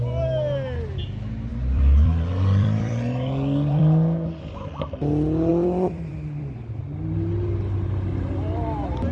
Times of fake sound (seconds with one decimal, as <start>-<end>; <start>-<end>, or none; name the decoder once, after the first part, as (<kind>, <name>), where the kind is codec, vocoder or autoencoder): 1.5-3.8 (vocoder, BigVGAN v2); 5.5-6.8